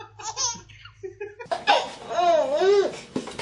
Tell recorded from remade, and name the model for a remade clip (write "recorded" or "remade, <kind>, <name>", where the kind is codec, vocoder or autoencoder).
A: recorded